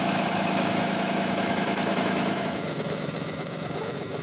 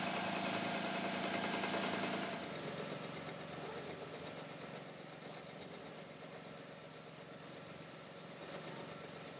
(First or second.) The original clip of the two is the second